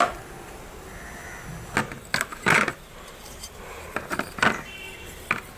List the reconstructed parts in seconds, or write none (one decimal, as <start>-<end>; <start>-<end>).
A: 2.3-4.4